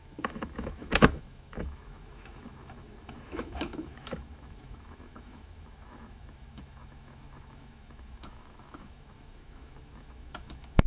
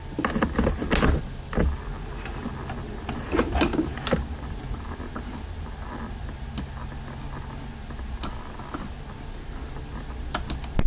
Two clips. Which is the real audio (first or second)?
second